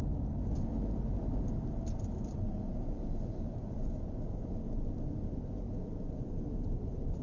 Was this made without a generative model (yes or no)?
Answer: yes